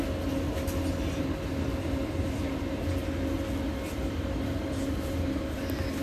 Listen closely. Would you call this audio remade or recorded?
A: recorded